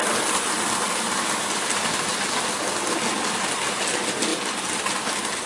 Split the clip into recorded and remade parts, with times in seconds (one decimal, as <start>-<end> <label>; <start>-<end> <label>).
0.0-5.5 recorded